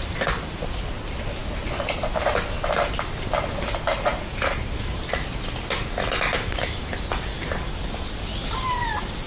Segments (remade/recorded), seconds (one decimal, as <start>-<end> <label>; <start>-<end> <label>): 0.0-4.1 recorded; 4.1-5.1 remade; 5.1-6.3 recorded; 6.3-7.6 remade; 7.6-9.3 recorded